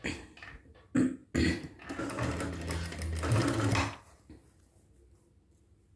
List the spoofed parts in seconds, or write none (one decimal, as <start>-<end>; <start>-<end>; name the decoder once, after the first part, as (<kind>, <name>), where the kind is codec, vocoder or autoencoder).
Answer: none